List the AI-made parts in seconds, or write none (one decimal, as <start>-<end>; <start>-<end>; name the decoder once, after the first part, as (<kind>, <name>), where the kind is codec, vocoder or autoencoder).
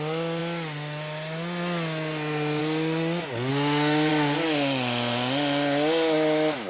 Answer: 3.5-4.1 (codec, DAC)